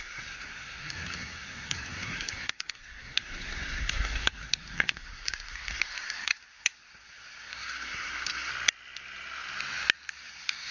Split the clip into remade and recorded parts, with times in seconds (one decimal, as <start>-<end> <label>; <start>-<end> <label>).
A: 0.0-8.5 remade; 8.5-10.1 recorded; 10.1-10.7 remade